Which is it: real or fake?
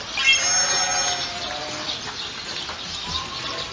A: real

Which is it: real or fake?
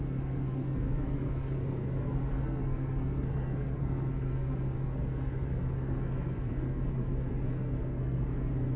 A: fake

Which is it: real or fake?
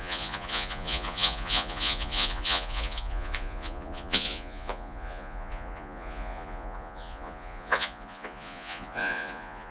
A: fake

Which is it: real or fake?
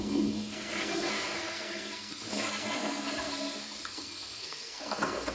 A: fake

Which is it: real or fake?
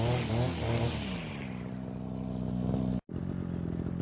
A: real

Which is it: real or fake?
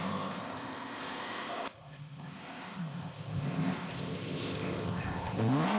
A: fake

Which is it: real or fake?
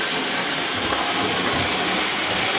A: real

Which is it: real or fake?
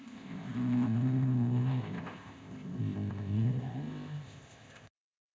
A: fake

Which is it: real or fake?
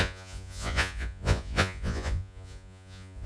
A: fake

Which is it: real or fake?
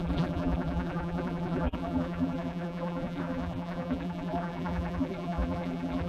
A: fake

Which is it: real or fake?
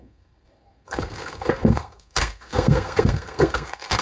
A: fake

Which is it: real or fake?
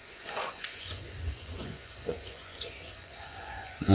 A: fake